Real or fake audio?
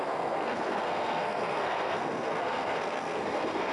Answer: fake